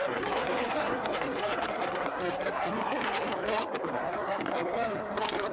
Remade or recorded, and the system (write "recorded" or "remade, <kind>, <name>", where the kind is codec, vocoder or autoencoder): remade, codec, SNAC